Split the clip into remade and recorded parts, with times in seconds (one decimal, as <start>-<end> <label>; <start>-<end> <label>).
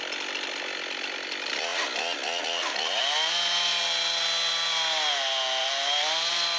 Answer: 0.0-5.6 recorded; 5.6-6.6 remade